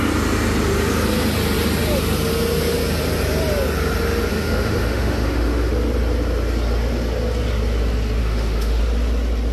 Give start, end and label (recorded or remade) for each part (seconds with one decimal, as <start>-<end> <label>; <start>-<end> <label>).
0.0-4.3 recorded; 4.3-5.7 remade; 5.7-8.2 recorded; 8.2-8.8 remade; 8.8-9.5 recorded